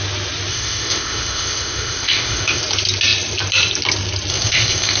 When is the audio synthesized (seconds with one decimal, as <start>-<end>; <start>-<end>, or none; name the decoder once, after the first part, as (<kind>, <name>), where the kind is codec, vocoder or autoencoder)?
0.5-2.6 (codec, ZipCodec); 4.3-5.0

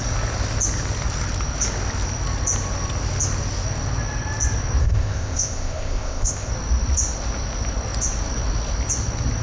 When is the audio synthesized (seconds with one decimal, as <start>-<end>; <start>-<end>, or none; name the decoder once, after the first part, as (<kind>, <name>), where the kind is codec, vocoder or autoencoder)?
4.8-6.5 (codec, ZipCodec)

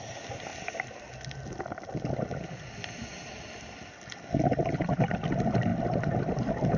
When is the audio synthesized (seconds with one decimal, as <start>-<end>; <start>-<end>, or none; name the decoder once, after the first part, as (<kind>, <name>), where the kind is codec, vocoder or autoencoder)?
none

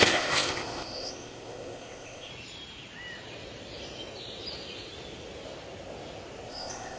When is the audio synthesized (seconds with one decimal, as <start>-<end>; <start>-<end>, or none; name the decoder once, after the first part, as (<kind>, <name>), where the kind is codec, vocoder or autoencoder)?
0.0-2.3 (codec, ZipCodec); 6.5-7.0